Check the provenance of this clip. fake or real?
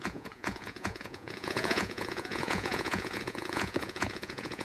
fake